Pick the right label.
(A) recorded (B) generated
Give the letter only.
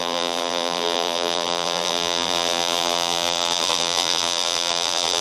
B